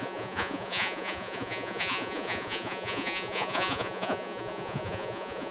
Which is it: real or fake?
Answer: fake